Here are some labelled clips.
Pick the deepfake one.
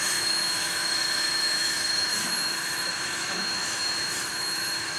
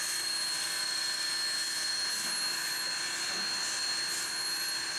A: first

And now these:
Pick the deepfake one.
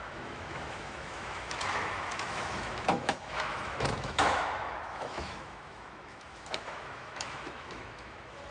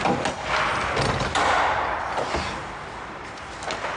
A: first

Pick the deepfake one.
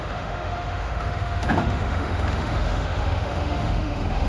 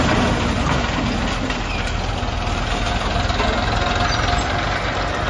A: first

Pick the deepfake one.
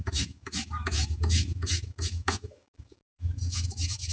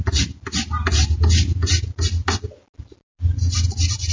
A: first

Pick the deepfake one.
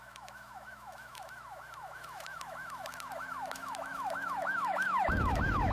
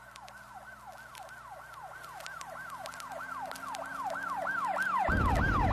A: first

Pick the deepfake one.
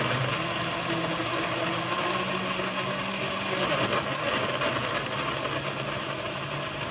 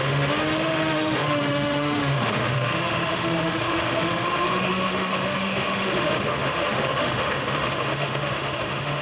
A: second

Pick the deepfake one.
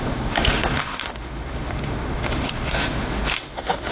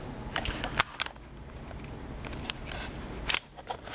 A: first